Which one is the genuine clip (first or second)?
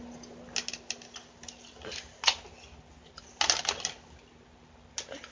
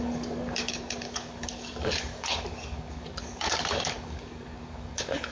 first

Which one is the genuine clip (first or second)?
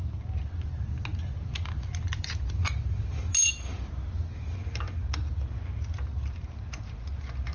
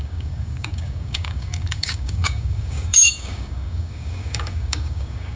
first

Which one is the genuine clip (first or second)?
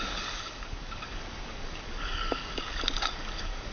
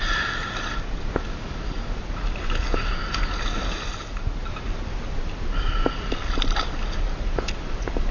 second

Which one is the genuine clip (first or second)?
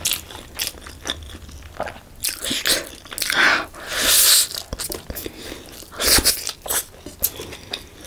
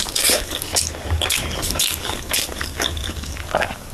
first